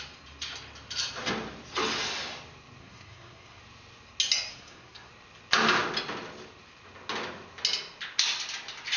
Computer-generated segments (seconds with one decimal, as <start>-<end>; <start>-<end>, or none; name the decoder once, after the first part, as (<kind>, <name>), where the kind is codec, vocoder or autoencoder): 2.8-3.6 (codec, SNAC); 4.5-5.1